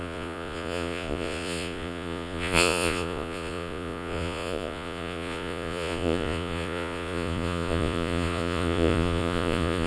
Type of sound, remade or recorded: remade